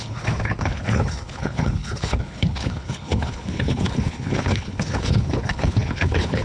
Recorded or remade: remade